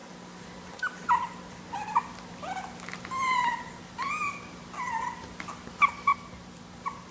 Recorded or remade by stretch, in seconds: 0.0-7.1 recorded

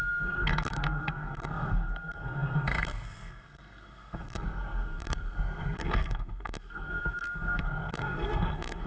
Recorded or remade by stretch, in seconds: 0.0-8.9 remade

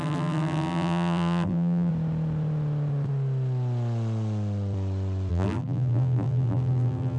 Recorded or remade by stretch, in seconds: 0.0-1.9 remade; 1.9-5.3 recorded; 5.3-7.2 remade

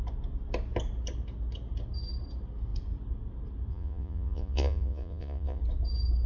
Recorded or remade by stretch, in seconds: 0.0-3.7 recorded; 3.7-5.6 remade; 5.6-6.3 recorded

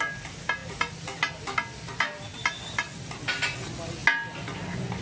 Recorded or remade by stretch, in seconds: 0.0-5.0 recorded

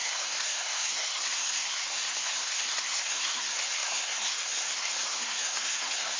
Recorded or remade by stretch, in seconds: 0.0-6.2 remade

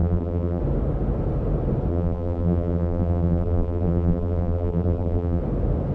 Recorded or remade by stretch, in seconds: 0.0-0.6 remade; 0.6-1.9 recorded; 1.9-5.4 remade; 5.4-5.9 recorded